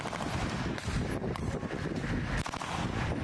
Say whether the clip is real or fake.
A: real